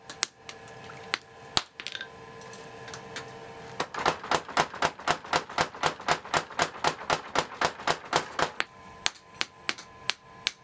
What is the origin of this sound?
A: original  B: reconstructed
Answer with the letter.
A